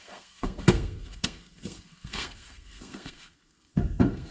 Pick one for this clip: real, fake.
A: fake